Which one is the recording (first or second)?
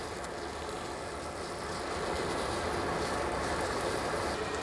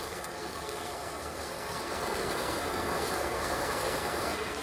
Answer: first